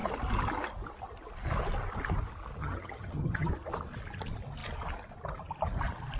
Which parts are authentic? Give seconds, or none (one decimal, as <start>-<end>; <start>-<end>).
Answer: 0.0-2.6; 3.5-6.2